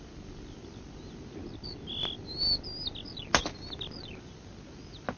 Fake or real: real